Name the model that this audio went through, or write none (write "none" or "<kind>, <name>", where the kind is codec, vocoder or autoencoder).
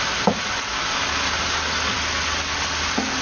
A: none